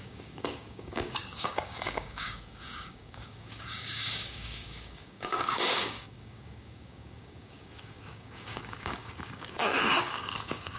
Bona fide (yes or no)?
no